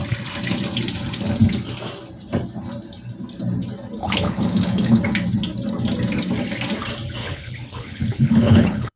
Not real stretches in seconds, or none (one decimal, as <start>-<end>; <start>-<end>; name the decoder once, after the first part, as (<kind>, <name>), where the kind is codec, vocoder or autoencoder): 4.0-5.0 (codec, HILCodec); 7.2-9.0